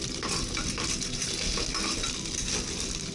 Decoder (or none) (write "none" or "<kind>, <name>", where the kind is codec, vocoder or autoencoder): none